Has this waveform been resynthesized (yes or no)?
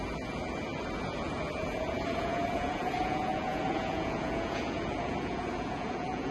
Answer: yes